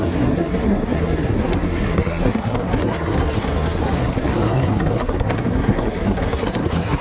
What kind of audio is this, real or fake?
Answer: fake